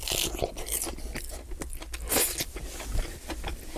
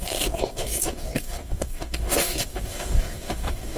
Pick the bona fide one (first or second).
first